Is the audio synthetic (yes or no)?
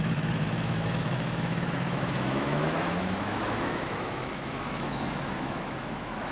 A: yes